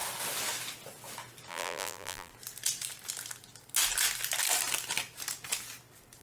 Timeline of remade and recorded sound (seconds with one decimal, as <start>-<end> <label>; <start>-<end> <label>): 0.0-1.5 recorded; 1.5-2.3 remade; 2.3-6.2 recorded